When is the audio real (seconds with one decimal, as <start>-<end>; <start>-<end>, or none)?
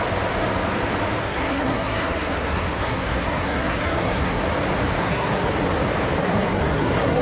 0.0-1.2; 4.4-5.0; 5.5-6.2